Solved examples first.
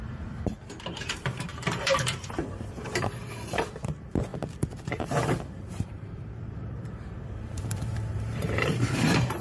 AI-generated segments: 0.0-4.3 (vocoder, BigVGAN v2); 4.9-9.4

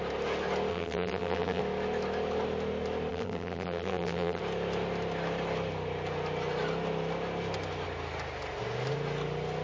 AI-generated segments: 0.7-1.6 (vocoder, BigVGAN v2); 3.1-4.4

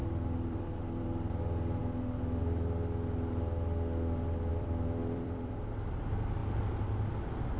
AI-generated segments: 0.0-1.4 (vocoder, BigVGAN v2); 4.5-5.6

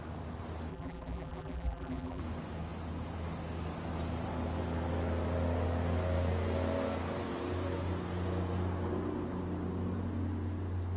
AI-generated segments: 0.7-2.2 (vocoder, BigVGAN v2)

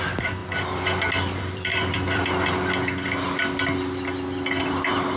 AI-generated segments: 0.0-0.4 (vocoder, BigVGAN v2); 1.4-2.2; 4.6-5.2

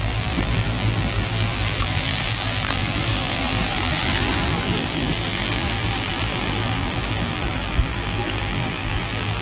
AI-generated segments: 0.0-9.4 (vocoder, BigVGAN v2)

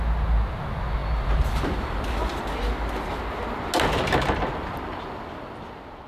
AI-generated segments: none